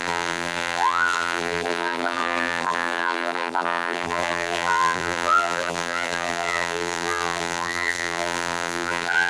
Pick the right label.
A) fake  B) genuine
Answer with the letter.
A